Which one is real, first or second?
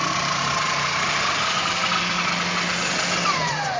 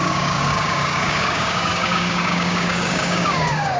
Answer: first